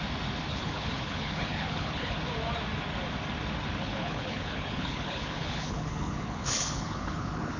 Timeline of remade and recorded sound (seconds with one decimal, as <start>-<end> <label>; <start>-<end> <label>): 0.0-0.5 recorded; 0.5-2.2 remade; 2.2-3.8 recorded; 3.8-7.6 remade